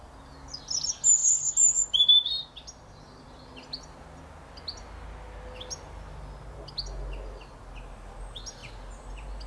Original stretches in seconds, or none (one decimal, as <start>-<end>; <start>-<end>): 0.0-9.5